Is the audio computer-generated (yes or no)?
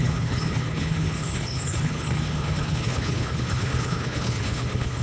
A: yes